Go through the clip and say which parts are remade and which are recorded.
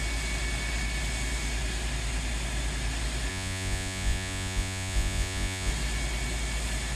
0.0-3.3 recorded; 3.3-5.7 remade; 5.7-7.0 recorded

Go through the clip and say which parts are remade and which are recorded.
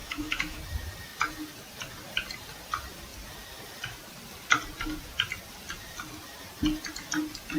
0.0-0.6 remade; 0.6-7.6 recorded